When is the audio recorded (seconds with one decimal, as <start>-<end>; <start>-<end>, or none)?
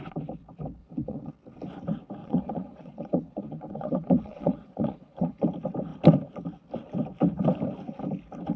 0.0-0.8; 1.3-2.2; 5.4-8.6